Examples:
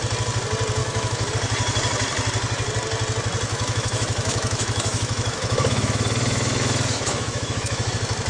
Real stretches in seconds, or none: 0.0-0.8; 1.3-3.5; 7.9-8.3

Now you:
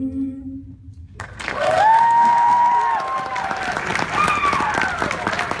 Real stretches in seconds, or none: 0.0-1.0; 2.7-5.6